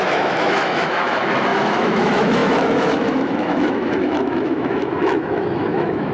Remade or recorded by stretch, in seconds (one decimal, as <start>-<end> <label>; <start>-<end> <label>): 0.0-6.1 remade